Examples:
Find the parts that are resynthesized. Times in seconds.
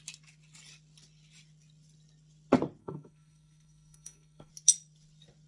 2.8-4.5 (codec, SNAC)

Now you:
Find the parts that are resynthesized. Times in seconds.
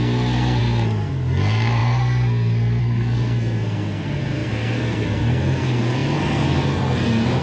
0.0-7.4 (codec, SNAC)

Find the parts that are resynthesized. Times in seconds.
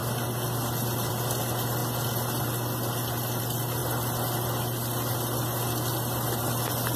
none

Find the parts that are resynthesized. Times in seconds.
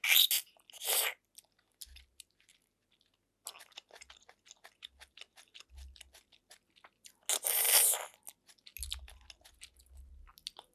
none